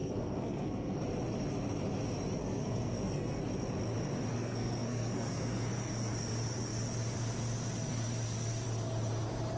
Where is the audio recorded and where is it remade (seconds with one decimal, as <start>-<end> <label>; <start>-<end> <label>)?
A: 0.0-1.0 remade; 1.0-2.4 recorded; 2.4-3.4 remade; 3.4-4.3 recorded; 4.3-6.1 remade; 6.1-9.6 recorded